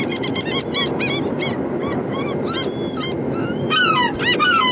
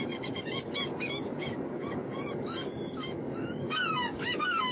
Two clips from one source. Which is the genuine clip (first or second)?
first